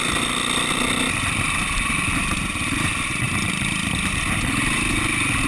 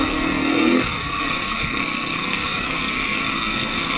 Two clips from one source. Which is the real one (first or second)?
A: first